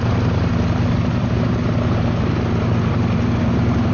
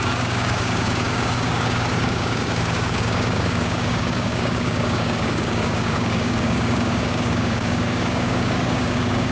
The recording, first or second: first